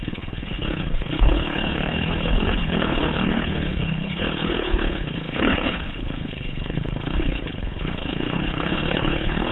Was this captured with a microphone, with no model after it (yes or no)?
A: no